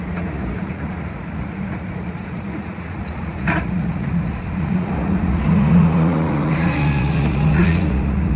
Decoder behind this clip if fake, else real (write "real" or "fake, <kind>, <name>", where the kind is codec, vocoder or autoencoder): fake, vocoder, Vocos